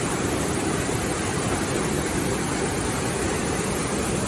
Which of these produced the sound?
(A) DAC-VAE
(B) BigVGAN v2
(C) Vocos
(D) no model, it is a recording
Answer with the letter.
D